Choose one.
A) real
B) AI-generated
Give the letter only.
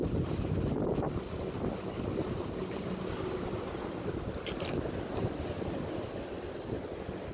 A